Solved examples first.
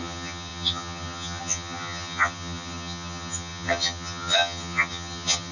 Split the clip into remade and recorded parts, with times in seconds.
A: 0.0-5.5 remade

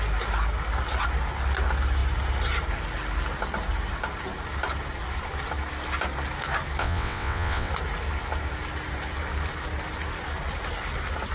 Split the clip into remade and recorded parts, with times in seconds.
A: 0.0-6.8 recorded; 6.8-7.7 remade; 7.7-11.3 recorded

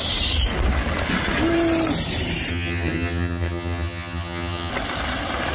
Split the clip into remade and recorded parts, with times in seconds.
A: 0.0-2.5 recorded; 2.5-4.7 remade; 4.7-5.5 recorded

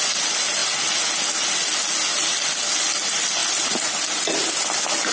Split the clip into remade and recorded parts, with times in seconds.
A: 0.0-5.1 recorded

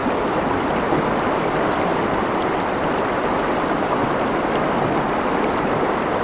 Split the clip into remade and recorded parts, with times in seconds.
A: 0.0-1.1 recorded; 1.1-6.2 remade